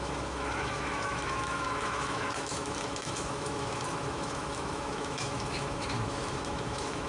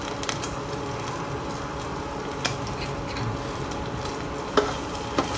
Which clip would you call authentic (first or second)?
second